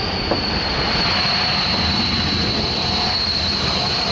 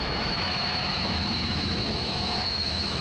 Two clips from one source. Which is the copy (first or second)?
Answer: second